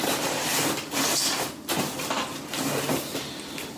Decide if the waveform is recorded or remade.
recorded